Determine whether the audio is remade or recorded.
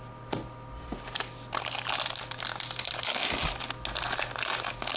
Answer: recorded